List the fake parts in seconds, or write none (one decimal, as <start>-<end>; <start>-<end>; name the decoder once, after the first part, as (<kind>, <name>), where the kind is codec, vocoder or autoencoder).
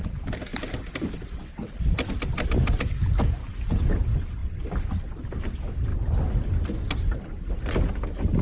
0.5-2.8 (vocoder, BigVGAN v2); 4.4-5.0